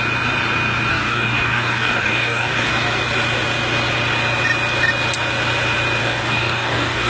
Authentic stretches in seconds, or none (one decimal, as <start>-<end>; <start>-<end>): 0.0-0.9; 2.7-6.0